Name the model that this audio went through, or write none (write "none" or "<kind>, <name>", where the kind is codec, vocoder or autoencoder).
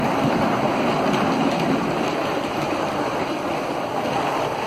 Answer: vocoder, BigVGAN v2